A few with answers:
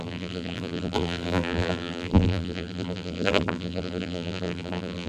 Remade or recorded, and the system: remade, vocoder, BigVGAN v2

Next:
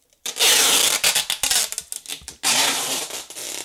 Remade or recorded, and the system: recorded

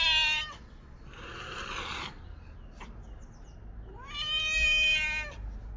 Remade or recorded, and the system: recorded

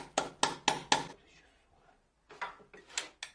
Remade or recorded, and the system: recorded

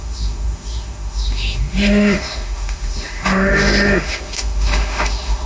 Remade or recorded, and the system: remade, autoencoder, DAC-VAE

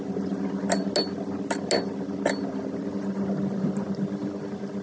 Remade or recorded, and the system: recorded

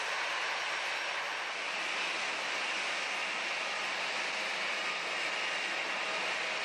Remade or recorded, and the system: recorded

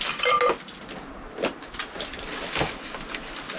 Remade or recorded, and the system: recorded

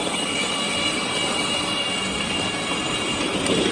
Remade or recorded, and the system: recorded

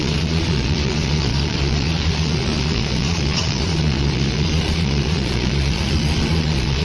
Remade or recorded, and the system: remade, vocoder, Vocos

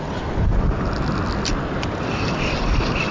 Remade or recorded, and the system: recorded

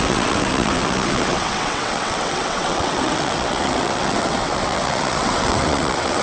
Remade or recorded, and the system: remade, vocoder, WaveNeXt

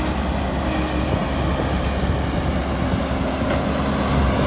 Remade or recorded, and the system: recorded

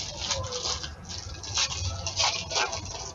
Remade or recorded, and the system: recorded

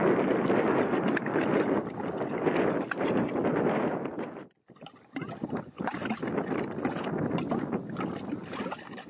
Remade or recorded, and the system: recorded